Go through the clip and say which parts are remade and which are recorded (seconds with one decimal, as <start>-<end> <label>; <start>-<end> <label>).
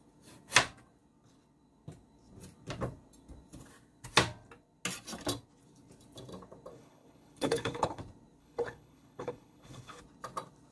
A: 0.0-6.7 recorded; 6.7-8.0 remade; 8.0-8.4 recorded; 8.4-10.0 remade; 10.0-10.7 recorded